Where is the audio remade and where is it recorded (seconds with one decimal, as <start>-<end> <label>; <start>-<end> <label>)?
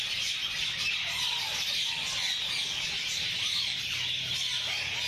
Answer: 0.0-0.4 recorded; 0.4-0.9 remade; 0.9-2.6 recorded; 2.6-4.1 remade; 4.1-5.1 recorded